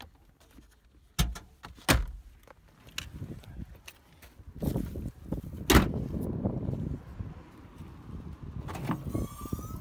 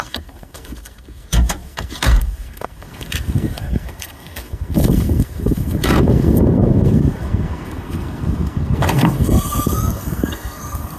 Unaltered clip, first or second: first